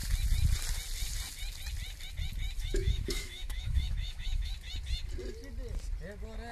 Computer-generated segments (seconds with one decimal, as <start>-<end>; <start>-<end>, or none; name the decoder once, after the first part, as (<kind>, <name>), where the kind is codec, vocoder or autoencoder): 2.6-4.5 (autoencoder, DAC-VAE)